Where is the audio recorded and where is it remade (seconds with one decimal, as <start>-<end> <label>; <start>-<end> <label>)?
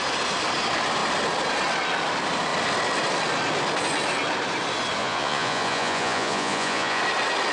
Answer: 0.0-5.0 recorded; 5.0-7.0 remade; 7.0-7.5 recorded